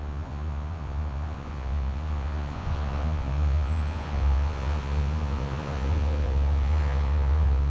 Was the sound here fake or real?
fake